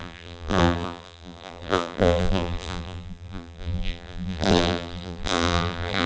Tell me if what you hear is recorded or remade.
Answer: remade